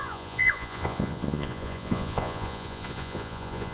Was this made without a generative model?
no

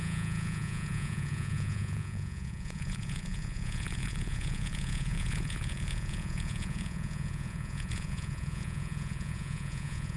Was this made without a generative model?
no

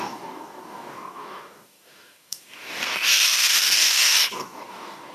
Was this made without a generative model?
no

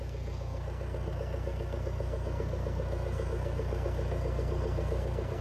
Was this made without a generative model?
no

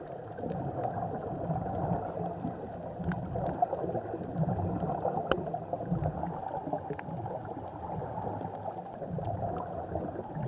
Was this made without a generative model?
yes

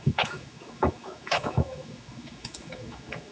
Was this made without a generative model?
no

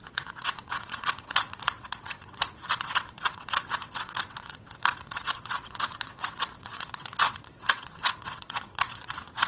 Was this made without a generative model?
no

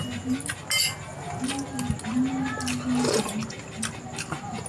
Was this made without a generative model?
yes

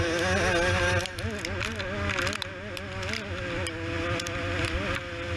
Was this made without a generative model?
yes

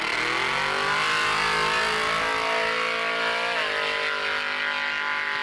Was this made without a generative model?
yes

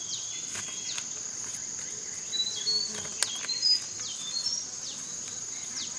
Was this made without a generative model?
yes